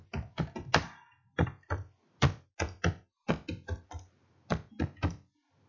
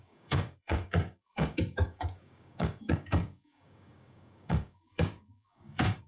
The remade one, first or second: second